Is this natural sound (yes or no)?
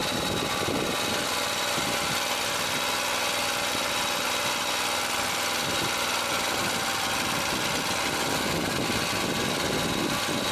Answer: yes